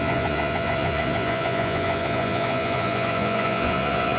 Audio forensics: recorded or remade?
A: remade